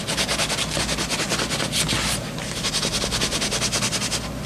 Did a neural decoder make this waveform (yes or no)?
no